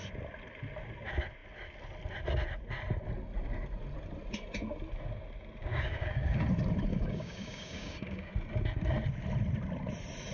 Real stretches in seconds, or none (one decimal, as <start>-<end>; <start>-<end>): 0.0-5.6; 6.4-6.9; 8.3-10.3